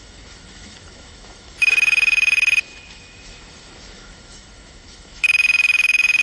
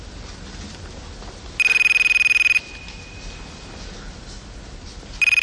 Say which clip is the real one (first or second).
second